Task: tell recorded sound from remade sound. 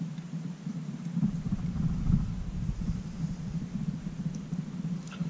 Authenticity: remade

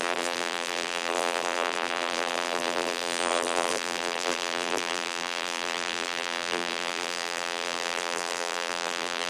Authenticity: remade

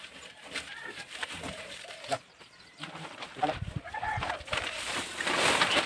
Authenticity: remade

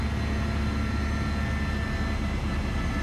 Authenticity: recorded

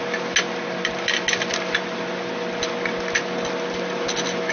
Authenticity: recorded